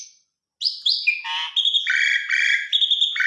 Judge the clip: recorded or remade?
recorded